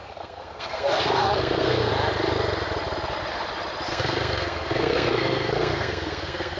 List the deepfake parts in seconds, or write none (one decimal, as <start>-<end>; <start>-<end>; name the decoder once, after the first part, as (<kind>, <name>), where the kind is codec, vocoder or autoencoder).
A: 0.0-1.9 (codec, SNAC); 3.9-6.6